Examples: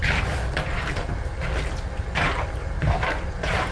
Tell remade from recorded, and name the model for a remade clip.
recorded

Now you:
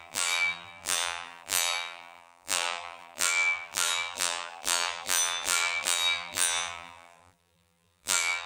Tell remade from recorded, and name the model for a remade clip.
remade, vocoder, BigVGAN v2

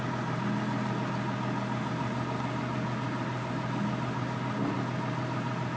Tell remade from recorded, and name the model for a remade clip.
recorded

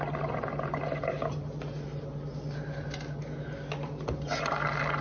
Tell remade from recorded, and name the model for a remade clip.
recorded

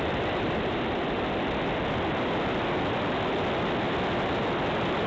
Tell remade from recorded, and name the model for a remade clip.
recorded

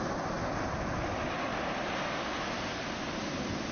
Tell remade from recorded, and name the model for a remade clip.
recorded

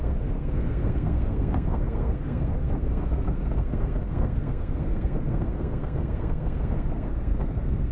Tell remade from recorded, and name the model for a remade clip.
remade, codec, SNAC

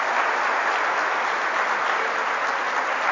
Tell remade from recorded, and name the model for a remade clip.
recorded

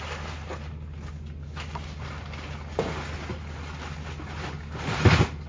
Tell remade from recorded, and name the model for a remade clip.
recorded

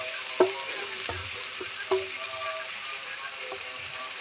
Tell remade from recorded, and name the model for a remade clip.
remade, vocoder, BigVGAN v2